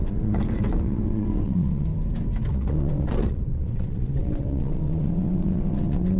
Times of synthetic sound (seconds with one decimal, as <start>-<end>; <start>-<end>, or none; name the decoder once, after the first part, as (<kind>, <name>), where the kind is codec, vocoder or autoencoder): 0.0-1.9 (vocoder, WaveNeXt); 2.5-6.2